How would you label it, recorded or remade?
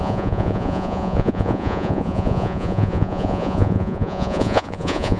remade